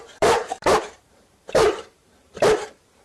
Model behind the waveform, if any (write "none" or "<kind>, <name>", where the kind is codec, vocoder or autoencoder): vocoder, BigVGAN v2